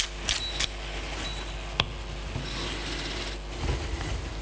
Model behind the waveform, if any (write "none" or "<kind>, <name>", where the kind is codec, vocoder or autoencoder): none